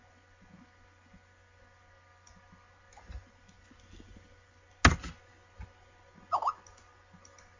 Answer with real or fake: real